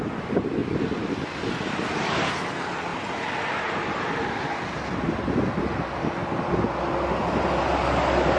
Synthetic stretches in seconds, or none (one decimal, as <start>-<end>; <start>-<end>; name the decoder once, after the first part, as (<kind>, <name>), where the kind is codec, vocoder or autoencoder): none